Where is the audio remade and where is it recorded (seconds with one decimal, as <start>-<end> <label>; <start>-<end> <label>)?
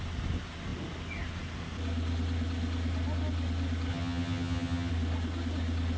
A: 0.0-3.9 recorded; 3.9-4.9 remade; 4.9-6.0 recorded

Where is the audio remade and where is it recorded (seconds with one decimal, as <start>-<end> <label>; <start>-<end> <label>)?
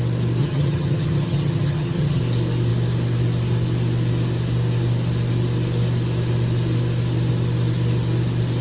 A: 0.0-0.4 recorded; 0.4-2.2 remade; 2.2-8.6 recorded